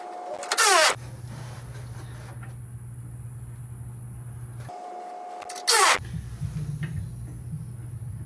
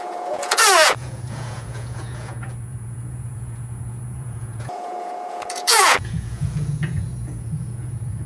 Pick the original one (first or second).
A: first